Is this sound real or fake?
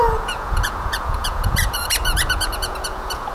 fake